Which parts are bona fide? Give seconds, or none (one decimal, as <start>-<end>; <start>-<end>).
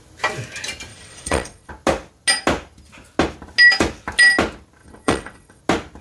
0.0-0.9; 1.7-4.8; 5.6-6.0